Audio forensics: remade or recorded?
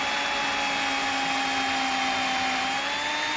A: recorded